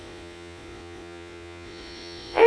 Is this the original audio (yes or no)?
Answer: no